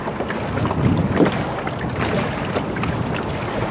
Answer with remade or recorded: recorded